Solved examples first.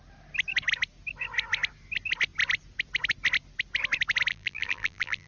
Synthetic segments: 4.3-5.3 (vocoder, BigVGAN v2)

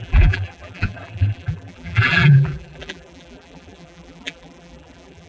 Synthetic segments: 0.0-5.3 (vocoder, BigVGAN v2)